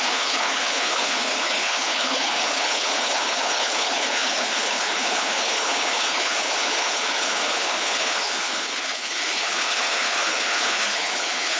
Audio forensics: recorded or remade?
remade